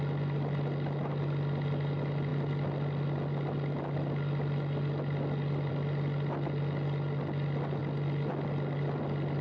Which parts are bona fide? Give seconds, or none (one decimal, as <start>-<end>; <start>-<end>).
0.0-9.4